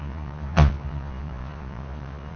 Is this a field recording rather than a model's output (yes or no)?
no